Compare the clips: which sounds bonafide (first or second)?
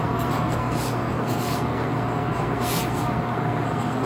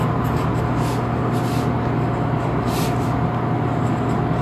second